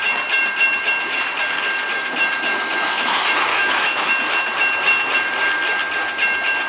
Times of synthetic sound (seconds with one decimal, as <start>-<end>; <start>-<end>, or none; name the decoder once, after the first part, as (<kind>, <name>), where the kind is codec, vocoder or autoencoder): 3.5-4.1 (autoencoder, DAC-VAE)